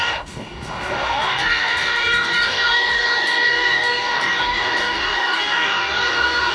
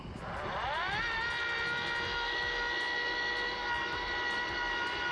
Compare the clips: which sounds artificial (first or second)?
first